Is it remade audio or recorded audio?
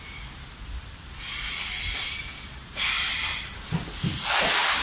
recorded